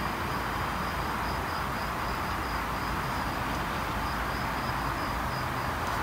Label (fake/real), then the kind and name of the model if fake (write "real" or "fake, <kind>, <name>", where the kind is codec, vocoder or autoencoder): real